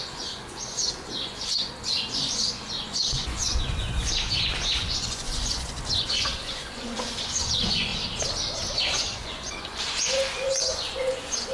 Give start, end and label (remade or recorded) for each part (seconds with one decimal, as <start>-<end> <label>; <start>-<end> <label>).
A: 0.0-7.9 remade; 7.9-8.8 recorded; 8.8-11.5 remade